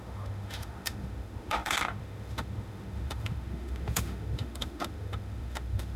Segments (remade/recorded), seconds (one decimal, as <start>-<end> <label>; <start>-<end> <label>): 0.0-6.0 remade